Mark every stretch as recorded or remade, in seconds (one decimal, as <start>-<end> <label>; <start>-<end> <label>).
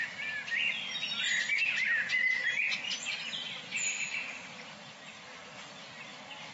0.0-6.5 recorded